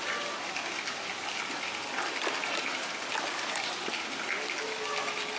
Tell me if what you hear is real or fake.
real